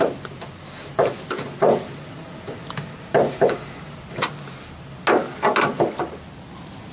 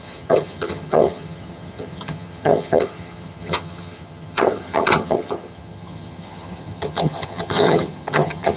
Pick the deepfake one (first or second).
second